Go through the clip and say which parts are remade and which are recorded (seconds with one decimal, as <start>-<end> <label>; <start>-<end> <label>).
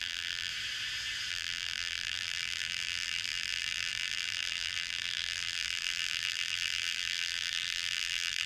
0.0-0.5 remade; 0.5-1.3 recorded; 1.3-8.5 remade